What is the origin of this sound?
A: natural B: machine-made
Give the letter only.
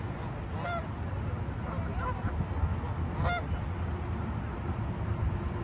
A